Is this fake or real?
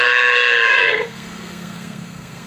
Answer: fake